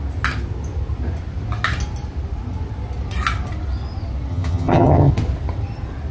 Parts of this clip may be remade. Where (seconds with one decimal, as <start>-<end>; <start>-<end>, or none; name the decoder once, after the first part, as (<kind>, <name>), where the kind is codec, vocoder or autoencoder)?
4.3-5.1 (vocoder, HiFi-GAN)